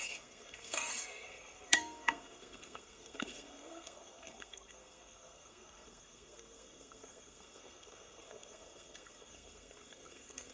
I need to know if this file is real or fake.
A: fake